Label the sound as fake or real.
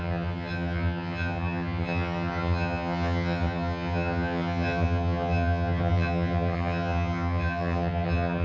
fake